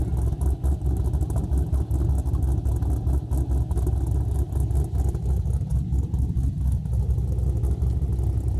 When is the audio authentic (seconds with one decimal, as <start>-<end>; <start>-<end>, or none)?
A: 0.0-8.6